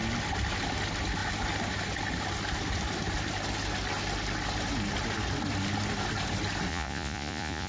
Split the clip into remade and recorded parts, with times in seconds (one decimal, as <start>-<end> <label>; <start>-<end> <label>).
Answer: 0.0-6.7 recorded; 6.7-7.7 remade

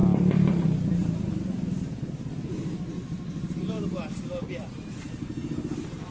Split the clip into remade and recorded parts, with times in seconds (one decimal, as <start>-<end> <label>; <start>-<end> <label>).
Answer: 0.0-6.1 recorded

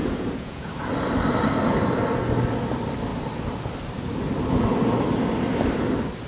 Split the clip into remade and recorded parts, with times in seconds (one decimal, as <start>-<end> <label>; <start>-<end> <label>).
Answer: 0.0-0.7 remade; 0.7-6.3 recorded

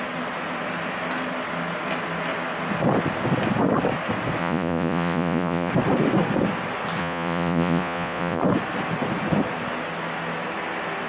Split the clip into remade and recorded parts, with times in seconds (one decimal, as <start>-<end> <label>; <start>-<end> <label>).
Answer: 0.0-4.4 recorded; 4.4-5.7 remade; 5.7-7.0 recorded; 7.0-8.4 remade; 8.4-11.1 recorded

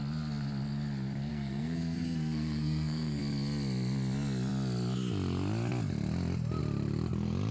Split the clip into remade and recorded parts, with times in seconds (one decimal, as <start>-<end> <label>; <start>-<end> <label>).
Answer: 0.0-1.3 recorded; 1.3-3.2 remade; 3.2-7.5 recorded

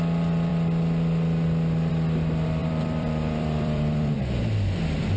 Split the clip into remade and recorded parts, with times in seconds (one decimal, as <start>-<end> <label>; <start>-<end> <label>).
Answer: 0.0-2.6 recorded; 2.6-4.2 remade; 4.2-5.2 recorded

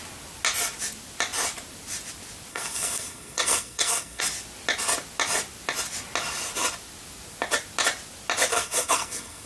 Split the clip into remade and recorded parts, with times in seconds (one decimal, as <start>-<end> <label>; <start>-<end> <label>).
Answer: 0.0-2.5 recorded; 2.5-4.2 remade; 4.2-8.5 recorded; 8.5-9.5 remade